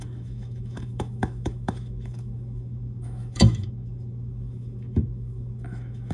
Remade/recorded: remade